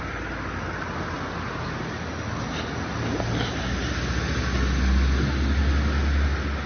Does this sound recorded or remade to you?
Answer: recorded